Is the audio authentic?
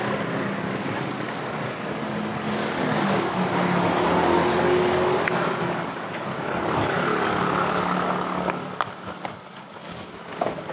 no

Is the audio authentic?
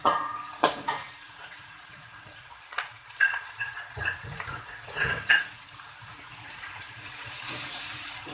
no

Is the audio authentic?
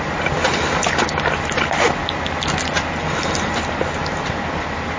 yes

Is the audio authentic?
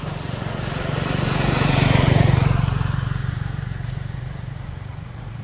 no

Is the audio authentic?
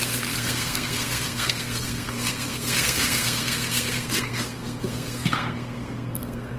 no